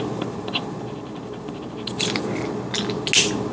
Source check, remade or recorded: recorded